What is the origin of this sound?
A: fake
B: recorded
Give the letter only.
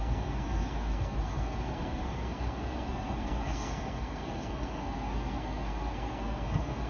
A